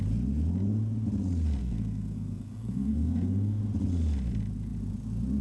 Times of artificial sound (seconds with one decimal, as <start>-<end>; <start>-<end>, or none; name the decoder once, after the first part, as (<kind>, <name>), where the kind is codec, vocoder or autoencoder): 1.6-3.6 (codec, SNAC)